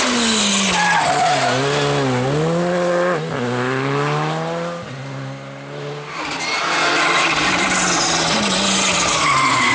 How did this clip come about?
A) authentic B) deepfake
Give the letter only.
A